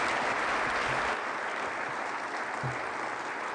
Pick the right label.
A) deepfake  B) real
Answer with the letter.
B